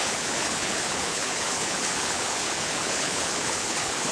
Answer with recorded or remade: remade